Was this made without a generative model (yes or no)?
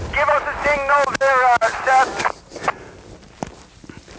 yes